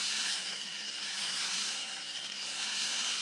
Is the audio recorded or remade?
remade